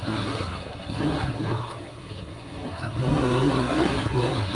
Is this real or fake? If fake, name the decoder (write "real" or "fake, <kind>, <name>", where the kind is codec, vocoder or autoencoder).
fake, codec, SNAC